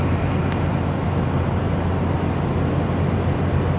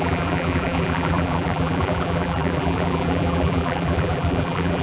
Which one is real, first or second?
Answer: first